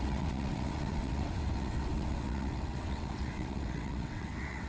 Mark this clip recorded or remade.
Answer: remade